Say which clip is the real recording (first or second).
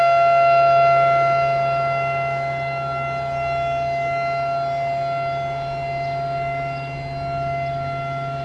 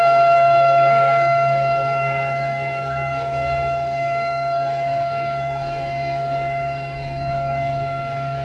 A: first